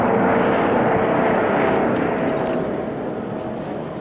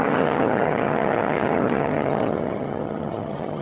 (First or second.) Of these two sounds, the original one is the first